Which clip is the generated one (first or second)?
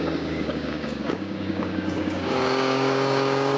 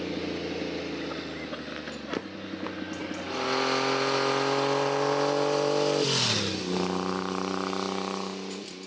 first